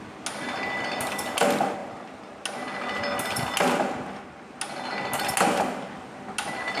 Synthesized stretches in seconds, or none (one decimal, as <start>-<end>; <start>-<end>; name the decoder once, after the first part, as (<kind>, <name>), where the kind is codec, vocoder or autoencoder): none